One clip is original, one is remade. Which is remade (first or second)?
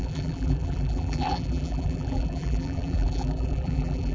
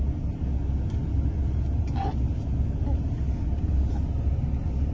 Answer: first